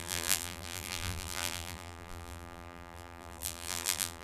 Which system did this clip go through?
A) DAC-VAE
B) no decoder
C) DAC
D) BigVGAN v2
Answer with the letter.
D